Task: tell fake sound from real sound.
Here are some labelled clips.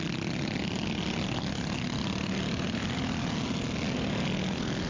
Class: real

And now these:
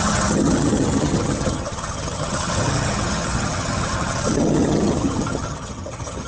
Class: fake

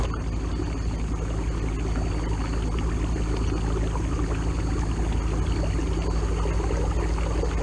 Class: real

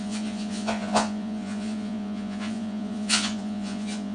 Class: fake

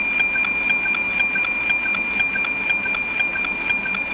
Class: real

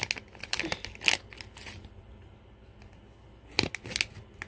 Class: real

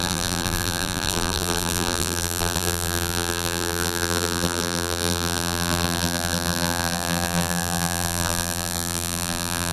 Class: fake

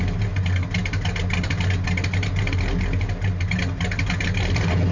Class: real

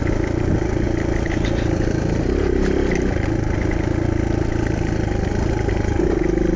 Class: real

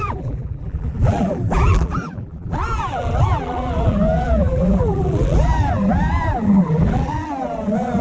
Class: fake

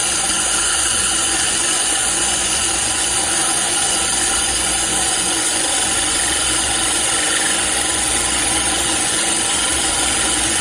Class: fake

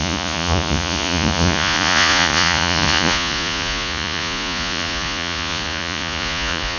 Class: fake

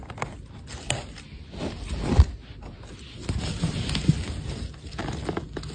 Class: real